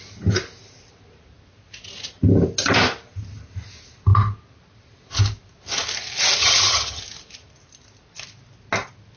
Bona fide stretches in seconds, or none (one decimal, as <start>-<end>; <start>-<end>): 0.0-6.4; 7.0-9.2